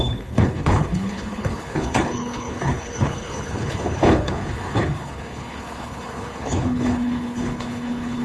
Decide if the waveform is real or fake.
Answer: fake